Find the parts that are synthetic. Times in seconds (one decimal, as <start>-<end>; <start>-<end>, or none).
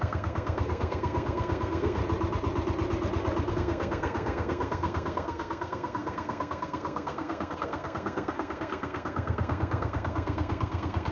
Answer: 0.0-2.0; 3.5-11.1